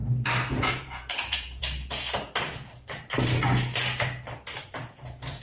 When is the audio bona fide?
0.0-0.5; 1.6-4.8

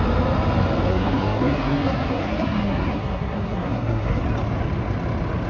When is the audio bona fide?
0.0-0.9; 4.2-5.5

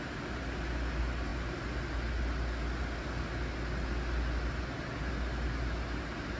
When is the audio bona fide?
0.0-6.4

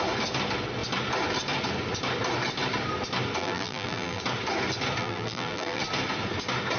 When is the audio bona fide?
0.0-3.4; 4.2-5.0; 5.8-6.8

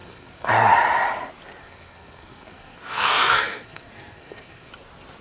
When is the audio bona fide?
0.5-1.6; 4.7-5.2